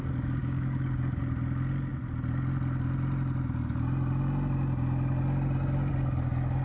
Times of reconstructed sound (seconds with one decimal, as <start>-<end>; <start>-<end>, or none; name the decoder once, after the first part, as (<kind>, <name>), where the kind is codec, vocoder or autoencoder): 0.4-1.2 (codec, DAC)